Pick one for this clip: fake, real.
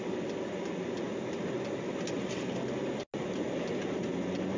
real